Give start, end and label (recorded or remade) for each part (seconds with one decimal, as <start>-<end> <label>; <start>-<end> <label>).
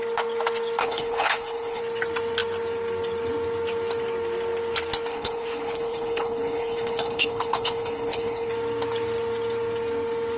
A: 0.0-0.8 recorded; 0.8-1.8 remade; 1.8-5.1 recorded; 5.1-8.5 remade; 8.5-10.4 recorded